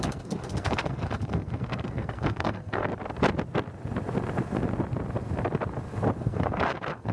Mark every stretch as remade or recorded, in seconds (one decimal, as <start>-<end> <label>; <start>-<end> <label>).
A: 0.0-2.9 remade; 2.9-6.2 recorded; 6.2-7.1 remade